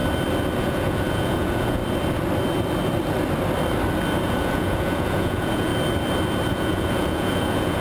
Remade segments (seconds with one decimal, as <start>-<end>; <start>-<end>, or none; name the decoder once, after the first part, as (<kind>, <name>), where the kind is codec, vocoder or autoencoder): 0.6-1.8 (vocoder, Vocos); 4.2-5.7; 6.5-7.8